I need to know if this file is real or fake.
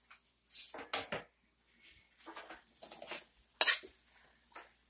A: real